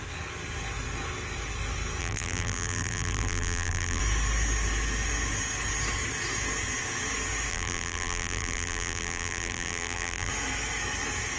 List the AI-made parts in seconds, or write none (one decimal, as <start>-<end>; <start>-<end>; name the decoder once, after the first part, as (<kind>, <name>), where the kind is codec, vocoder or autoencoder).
2.0-4.0 (vocoder, BigVGAN v2); 7.5-10.3